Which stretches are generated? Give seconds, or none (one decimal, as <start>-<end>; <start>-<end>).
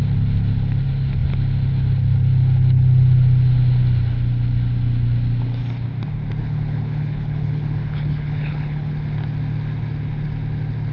6.4-8.9